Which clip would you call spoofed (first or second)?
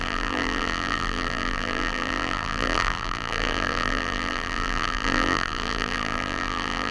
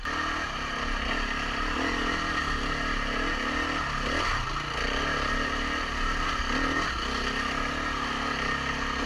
first